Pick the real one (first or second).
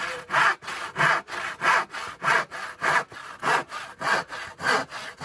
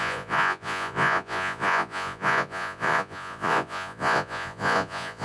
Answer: first